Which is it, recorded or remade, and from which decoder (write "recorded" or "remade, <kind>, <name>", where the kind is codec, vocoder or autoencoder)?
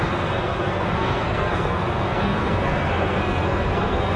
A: remade, codec, SNAC